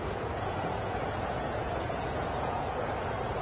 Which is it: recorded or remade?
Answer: remade